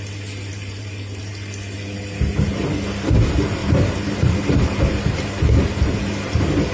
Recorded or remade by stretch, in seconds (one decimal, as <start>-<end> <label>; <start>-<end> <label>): 0.0-0.5 recorded; 0.5-1.3 remade; 1.3-3.6 recorded; 3.6-5.0 remade; 5.0-6.7 recorded